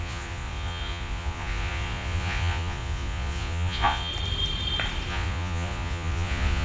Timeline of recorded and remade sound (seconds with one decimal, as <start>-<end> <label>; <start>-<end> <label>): 0.0-4.1 remade; 4.1-5.1 recorded; 5.1-6.6 remade